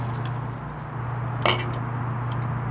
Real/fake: real